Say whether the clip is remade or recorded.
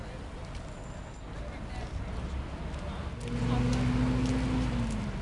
recorded